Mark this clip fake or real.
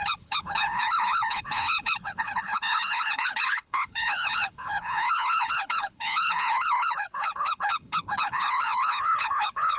fake